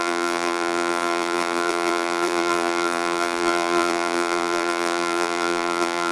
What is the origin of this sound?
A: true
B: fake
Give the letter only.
B